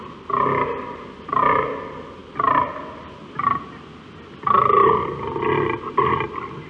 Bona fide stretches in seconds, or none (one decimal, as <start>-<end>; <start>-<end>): 0.0-6.7